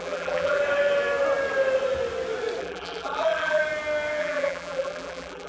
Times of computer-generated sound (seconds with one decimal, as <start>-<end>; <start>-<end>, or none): 0.0-0.6; 2.6-3.6; 4.2-5.5